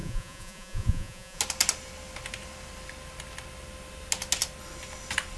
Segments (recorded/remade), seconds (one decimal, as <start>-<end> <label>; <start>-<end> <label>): 0.0-1.4 remade; 1.4-5.4 recorded